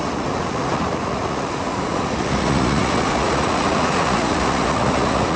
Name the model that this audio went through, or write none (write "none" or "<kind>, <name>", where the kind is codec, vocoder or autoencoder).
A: vocoder, Vocos